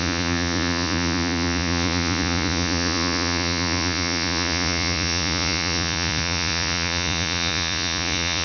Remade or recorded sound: remade